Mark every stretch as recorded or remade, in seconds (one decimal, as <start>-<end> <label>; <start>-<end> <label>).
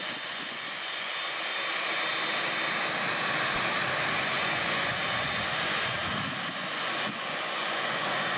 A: 0.0-1.5 remade; 1.5-4.2 recorded; 4.2-6.0 remade; 6.0-6.5 recorded; 6.5-8.4 remade